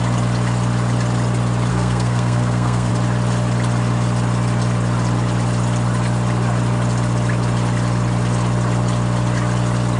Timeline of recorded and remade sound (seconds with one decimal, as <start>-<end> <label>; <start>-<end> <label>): 0.0-1.7 recorded; 1.7-2.9 remade; 2.9-10.0 recorded

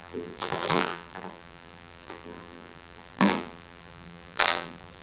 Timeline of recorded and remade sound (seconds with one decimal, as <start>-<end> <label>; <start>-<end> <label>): 0.0-5.0 remade

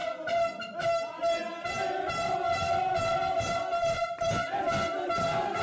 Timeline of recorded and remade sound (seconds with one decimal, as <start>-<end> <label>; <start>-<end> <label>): 0.0-5.6 recorded

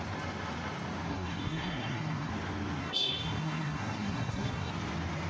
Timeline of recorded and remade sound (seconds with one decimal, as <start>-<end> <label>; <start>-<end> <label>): 0.0-1.1 recorded; 1.1-2.3 remade; 2.3-2.8 recorded; 2.8-4.7 remade; 4.7-5.3 recorded

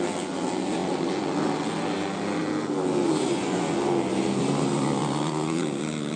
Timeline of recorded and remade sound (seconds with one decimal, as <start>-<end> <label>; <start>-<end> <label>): 0.0-6.2 recorded

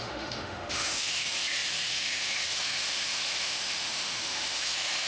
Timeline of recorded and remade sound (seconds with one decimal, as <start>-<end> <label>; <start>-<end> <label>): 0.0-5.1 remade

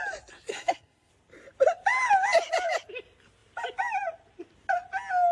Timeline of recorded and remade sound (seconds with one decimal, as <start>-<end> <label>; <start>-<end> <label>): 0.0-0.5 recorded; 0.5-1.1 remade; 1.1-5.3 recorded